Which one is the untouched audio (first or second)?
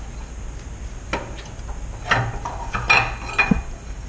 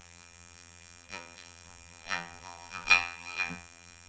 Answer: first